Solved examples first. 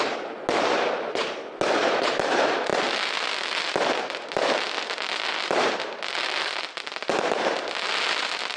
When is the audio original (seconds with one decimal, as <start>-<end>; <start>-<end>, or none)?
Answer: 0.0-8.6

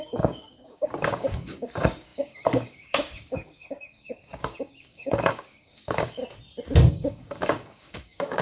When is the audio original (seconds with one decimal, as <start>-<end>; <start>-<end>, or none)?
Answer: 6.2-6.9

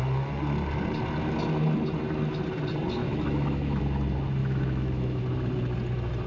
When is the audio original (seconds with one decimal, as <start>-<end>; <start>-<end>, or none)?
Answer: 0.0-3.0; 3.8-4.4; 5.2-6.3